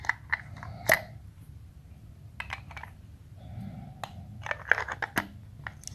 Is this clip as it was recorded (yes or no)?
yes